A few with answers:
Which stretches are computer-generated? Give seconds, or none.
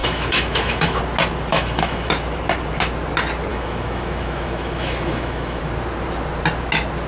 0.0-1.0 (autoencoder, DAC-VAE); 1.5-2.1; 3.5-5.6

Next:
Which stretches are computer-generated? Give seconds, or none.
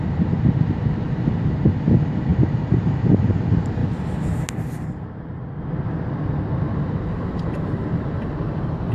2.3-3.4 (vocoder, BigVGAN v2); 6.7-7.8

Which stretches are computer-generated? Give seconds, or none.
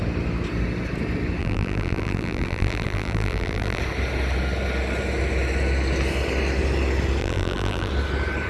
1.4-3.8 (vocoder, BigVGAN v2); 7.2-7.9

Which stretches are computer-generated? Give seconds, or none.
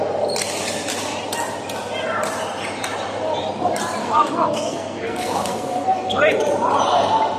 4.0-6.2 (codec, SNAC)